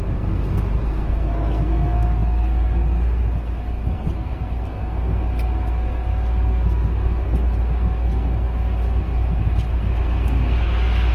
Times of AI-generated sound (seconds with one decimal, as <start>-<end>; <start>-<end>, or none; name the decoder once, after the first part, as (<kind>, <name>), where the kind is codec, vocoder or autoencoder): 0.0-11.1 (codec, SNAC)